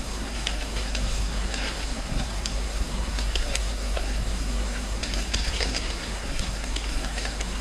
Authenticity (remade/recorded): remade